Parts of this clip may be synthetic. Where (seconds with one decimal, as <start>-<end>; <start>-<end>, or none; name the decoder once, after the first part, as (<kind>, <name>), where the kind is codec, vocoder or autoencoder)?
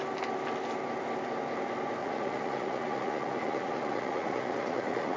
2.0-5.2 (vocoder, Vocos)